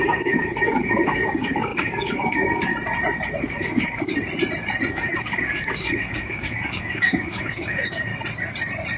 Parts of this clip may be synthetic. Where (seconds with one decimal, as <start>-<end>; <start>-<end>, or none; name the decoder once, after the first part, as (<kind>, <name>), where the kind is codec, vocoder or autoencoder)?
0.0-2.7 (codec, DAC); 3.4-4.1; 4.9-8.1